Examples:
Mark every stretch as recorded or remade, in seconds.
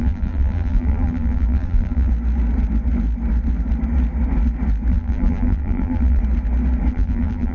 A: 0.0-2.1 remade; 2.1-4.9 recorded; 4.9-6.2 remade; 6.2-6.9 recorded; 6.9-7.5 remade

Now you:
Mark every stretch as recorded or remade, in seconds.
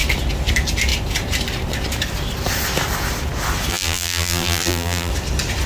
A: 0.0-3.7 recorded; 3.7-5.1 remade; 5.1-5.7 recorded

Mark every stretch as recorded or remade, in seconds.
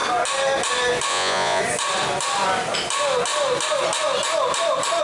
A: 0.0-1.1 recorded; 1.1-1.6 remade; 1.6-5.0 recorded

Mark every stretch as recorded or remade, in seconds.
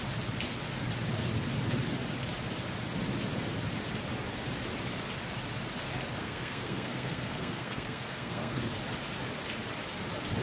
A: 0.0-6.2 recorded; 6.2-8.6 remade; 8.6-10.4 recorded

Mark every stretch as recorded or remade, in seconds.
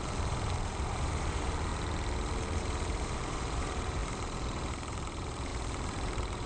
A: 0.0-1.7 remade; 1.7-2.6 recorded; 2.6-6.5 remade